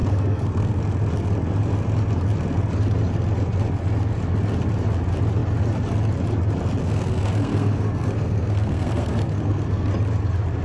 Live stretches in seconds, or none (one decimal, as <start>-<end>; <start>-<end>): 0.8-6.8; 9.9-10.6